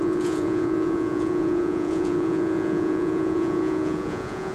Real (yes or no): no